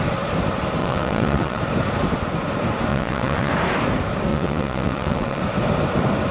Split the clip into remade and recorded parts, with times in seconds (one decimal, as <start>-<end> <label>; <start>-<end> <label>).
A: 0.0-0.8 recorded; 0.8-1.6 remade; 1.6-2.9 recorded; 2.9-3.5 remade; 3.5-4.3 recorded; 4.3-5.4 remade; 5.4-6.3 recorded